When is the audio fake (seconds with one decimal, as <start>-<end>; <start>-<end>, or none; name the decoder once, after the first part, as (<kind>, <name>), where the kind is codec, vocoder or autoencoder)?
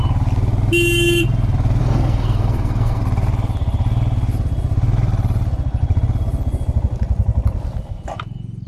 1.8-3.0 (codec, SNAC)